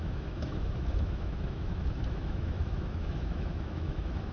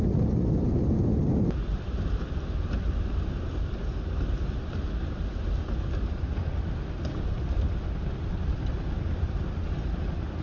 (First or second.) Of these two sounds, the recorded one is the second